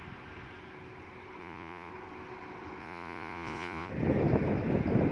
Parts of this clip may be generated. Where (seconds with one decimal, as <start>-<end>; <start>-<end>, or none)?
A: 1.4-1.9; 2.8-3.9